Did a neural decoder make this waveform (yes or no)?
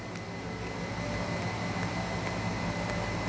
no